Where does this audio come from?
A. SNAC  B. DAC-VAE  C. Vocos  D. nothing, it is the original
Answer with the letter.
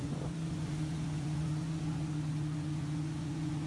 C